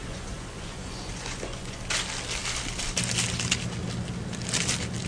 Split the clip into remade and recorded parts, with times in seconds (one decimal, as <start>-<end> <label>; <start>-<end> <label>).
0.0-1.8 remade; 1.8-5.1 recorded